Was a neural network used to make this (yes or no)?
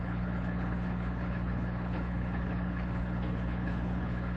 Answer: yes